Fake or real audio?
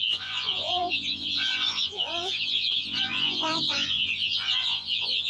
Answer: fake